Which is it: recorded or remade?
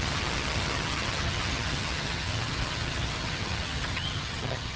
remade